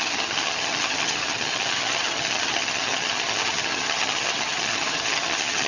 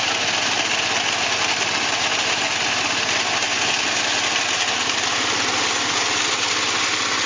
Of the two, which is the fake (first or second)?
first